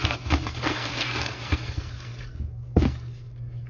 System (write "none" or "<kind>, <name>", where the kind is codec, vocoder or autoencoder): codec, SNAC